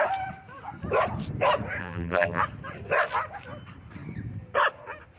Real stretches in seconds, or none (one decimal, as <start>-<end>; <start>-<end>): 0.0-1.8; 2.4-5.2